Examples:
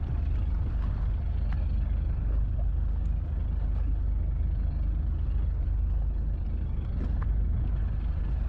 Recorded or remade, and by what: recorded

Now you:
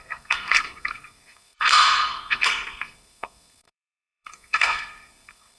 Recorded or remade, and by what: remade, codec, SNAC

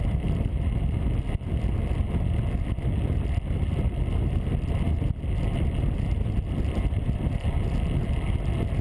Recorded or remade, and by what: recorded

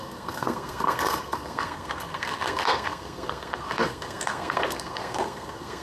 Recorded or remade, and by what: remade, codec, SNAC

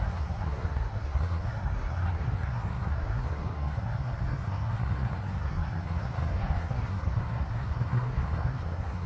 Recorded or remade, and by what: remade, codec, SNAC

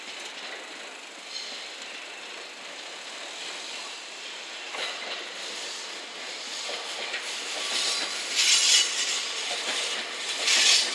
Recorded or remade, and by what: recorded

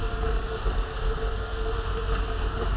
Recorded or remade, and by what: remade, codec, SNAC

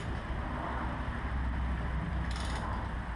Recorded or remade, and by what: recorded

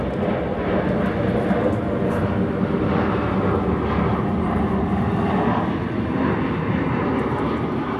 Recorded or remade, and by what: recorded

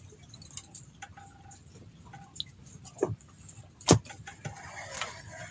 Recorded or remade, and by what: recorded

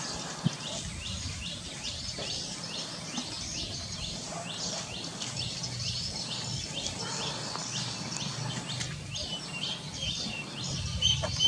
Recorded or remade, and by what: recorded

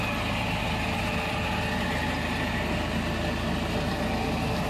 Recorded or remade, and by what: recorded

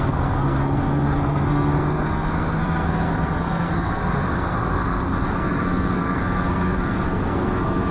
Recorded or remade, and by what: remade, codec, SNAC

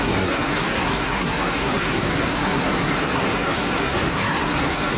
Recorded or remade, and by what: remade, codec, SNAC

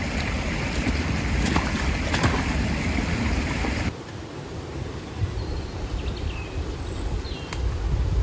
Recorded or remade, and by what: recorded